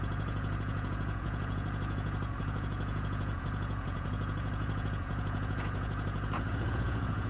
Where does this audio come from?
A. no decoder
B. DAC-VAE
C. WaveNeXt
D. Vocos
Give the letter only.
D